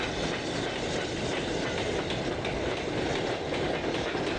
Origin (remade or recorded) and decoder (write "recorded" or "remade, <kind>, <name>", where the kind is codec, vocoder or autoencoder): recorded